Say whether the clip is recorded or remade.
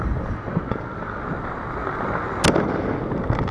recorded